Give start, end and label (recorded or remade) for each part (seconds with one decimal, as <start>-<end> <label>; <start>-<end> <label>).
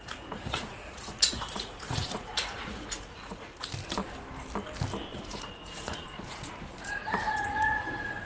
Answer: 0.0-3.7 remade; 3.7-5.2 recorded; 5.2-8.3 remade